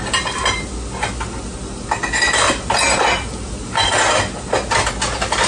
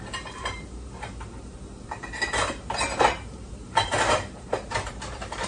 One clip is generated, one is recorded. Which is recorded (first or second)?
first